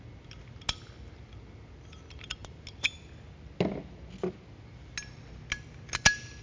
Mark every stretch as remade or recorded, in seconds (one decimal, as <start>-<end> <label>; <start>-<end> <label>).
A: 0.0-6.4 recorded

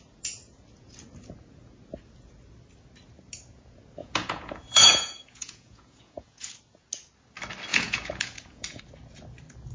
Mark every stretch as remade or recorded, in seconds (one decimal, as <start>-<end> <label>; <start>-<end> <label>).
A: 0.0-4.0 recorded; 4.0-6.5 remade; 6.5-7.7 recorded; 7.7-8.8 remade; 8.8-9.7 recorded

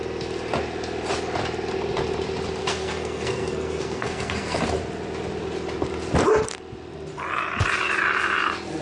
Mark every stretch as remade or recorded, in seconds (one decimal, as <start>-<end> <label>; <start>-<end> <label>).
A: 0.0-2.6 recorded; 2.6-4.6 remade; 4.6-8.8 recorded

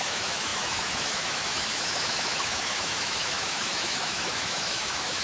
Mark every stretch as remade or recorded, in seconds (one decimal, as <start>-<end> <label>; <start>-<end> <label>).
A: 0.0-5.2 remade

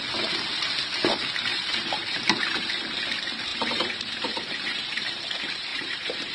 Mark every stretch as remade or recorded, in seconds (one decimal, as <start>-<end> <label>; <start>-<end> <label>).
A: 0.0-1.5 recorded; 1.5-2.7 remade; 2.7-3.5 recorded; 3.5-5.2 remade; 5.2-5.7 recorded; 5.7-6.3 remade